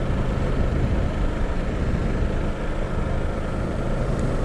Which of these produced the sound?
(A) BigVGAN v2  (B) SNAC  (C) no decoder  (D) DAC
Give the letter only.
C